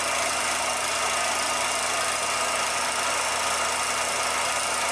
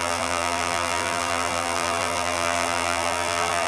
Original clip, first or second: first